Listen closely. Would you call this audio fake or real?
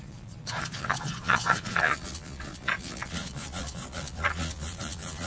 fake